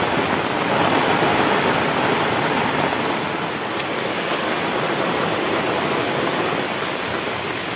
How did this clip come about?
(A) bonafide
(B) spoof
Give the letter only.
A